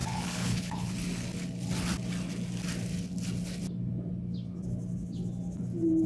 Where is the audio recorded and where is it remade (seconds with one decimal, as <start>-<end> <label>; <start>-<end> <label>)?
0.0-0.9 remade; 0.9-6.1 recorded

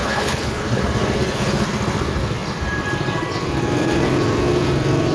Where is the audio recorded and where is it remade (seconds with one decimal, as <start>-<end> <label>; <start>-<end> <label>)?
0.0-0.8 remade; 0.8-5.1 recorded

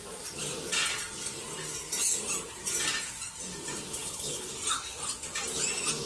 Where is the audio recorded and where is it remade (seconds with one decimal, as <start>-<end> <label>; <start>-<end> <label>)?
0.0-4.0 recorded; 4.0-4.5 remade; 4.5-6.1 recorded

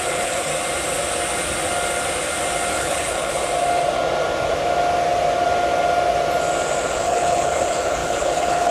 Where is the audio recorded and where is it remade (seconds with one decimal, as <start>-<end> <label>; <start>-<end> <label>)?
0.0-0.5 remade; 0.5-2.7 recorded; 2.7-3.4 remade; 3.4-6.9 recorded; 6.9-8.7 remade

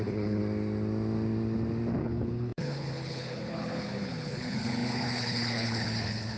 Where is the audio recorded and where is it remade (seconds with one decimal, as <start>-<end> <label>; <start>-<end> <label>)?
0.0-0.4 remade; 0.4-2.0 recorded; 2.0-6.4 remade

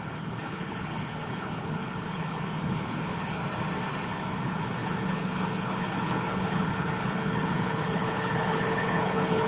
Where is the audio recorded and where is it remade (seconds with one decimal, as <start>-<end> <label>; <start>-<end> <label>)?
0.0-3.4 remade; 3.4-3.9 recorded; 3.9-9.5 remade

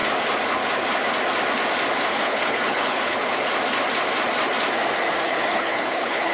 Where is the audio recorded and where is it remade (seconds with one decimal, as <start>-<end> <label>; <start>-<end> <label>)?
0.0-2.1 recorded; 2.1-3.5 remade; 3.5-5.3 recorded; 5.3-6.3 remade